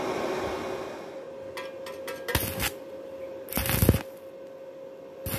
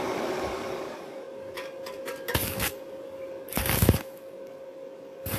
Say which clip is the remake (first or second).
second